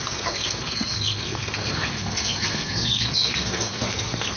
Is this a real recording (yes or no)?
no